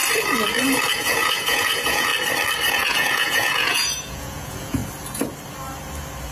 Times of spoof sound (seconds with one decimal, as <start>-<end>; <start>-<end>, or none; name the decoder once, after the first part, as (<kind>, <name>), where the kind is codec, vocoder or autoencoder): 0.8-2.1 (vocoder, Vocos); 2.7-4.8